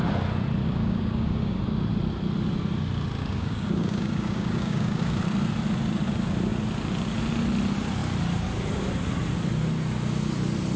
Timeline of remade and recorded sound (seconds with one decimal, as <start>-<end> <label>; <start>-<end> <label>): 0.0-0.6 recorded; 0.6-1.6 remade; 1.6-3.2 recorded; 3.2-5.2 remade; 5.2-10.8 recorded